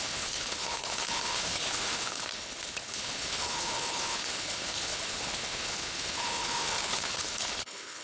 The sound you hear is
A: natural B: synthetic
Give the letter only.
B